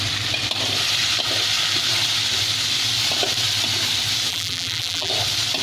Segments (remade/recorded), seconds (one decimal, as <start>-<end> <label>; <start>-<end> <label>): 0.0-4.3 recorded; 4.3-5.1 remade; 5.1-5.6 recorded